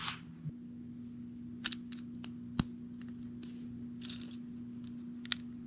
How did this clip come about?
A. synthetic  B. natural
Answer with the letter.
B